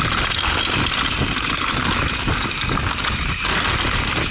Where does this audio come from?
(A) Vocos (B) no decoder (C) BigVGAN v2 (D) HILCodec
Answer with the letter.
B